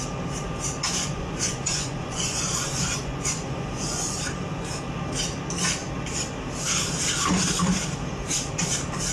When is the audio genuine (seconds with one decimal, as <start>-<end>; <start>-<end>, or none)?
0.0-0.9; 4.2-9.1

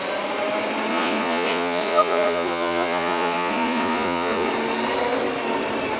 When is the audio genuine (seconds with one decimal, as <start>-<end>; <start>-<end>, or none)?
0.0-0.9; 4.5-6.0

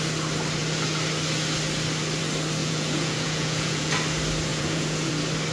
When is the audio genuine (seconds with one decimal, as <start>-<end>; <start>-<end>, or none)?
0.0-2.6; 3.9-4.5; 5.1-5.5

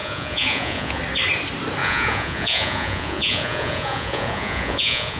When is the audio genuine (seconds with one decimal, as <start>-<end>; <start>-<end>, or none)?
1.0-1.8

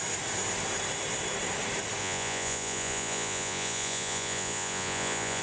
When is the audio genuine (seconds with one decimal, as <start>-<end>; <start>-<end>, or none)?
0.0-2.0

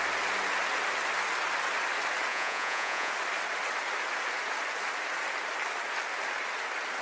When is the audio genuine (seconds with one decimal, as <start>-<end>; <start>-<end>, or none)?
0.0-2.3; 3.1-7.0